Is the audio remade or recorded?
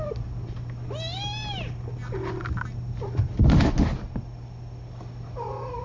recorded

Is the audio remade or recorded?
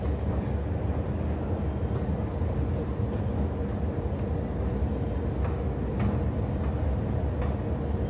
recorded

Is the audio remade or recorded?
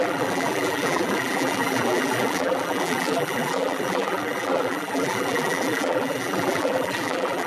remade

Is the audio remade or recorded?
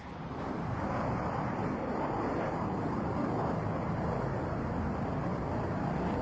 recorded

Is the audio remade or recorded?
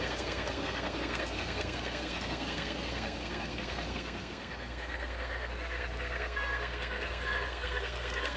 remade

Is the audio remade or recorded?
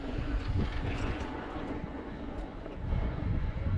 remade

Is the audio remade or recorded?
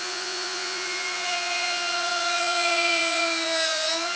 remade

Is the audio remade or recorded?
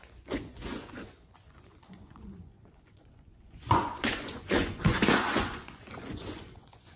remade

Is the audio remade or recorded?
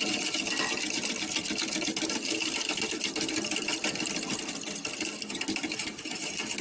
recorded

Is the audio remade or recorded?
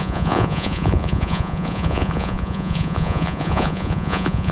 remade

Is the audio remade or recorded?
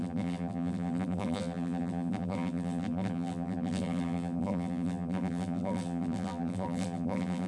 remade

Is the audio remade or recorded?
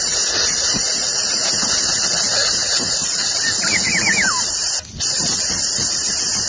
recorded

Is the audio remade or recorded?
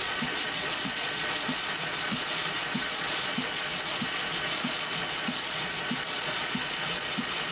remade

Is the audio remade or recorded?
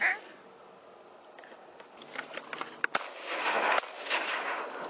recorded